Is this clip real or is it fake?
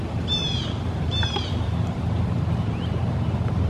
fake